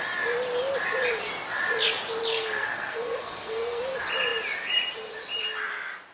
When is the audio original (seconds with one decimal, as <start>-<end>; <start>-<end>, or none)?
0.0-2.3; 3.8-6.1